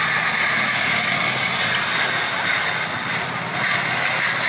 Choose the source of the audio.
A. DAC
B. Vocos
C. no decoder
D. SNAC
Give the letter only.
C